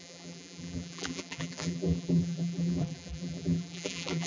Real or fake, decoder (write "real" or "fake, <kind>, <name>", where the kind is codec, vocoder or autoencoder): fake, vocoder, BigVGAN v2